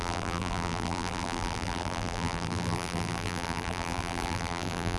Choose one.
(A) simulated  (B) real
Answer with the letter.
A